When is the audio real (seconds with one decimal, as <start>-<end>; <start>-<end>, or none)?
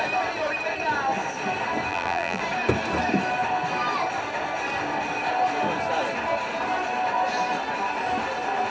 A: 0.0-1.9; 2.4-8.7